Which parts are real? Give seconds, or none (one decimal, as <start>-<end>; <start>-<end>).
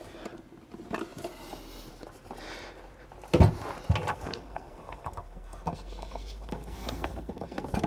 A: 0.0-4.1